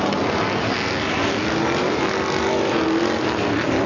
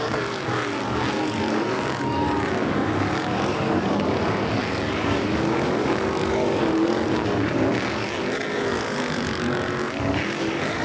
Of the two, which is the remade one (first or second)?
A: second